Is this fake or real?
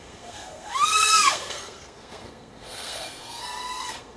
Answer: fake